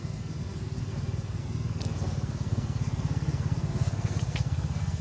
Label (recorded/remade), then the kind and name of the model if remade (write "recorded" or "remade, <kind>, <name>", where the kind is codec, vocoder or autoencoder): remade, codec, SNAC